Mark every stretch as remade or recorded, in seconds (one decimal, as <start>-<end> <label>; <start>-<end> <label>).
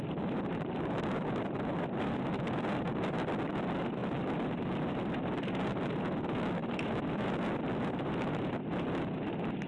0.0-9.7 recorded